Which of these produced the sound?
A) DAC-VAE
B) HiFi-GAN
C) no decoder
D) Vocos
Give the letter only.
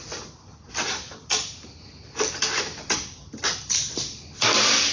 C